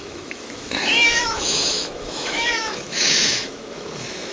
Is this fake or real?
fake